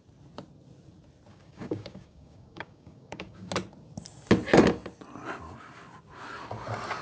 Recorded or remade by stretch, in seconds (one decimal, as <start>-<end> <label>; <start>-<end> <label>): 0.0-1.3 recorded; 1.3-3.5 remade; 3.5-7.0 recorded